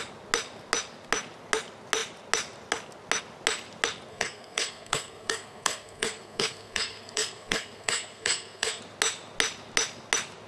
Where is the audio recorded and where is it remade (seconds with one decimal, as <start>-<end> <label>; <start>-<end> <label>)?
0.0-4.1 recorded; 4.1-8.8 remade; 8.8-10.5 recorded